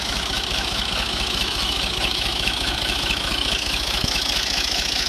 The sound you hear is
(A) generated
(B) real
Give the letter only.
A